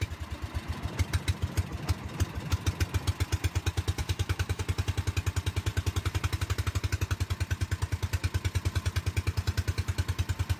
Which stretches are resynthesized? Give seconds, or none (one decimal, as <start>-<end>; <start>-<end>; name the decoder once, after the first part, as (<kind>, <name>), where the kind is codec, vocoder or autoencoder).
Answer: 4.0-4.6 (autoencoder, DAC-VAE)